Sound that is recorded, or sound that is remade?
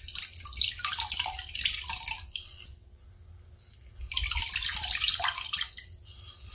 recorded